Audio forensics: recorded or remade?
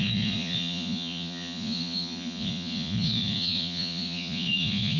remade